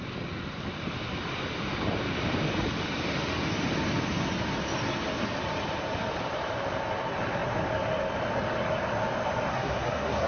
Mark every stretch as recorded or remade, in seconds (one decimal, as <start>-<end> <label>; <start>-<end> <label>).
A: 0.0-9.5 recorded; 9.5-10.3 remade